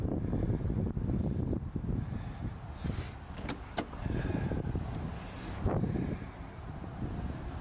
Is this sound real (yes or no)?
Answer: yes